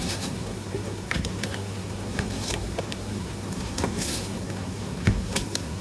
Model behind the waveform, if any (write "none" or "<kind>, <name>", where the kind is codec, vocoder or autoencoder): codec, SNAC